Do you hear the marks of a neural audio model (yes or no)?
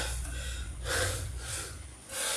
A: yes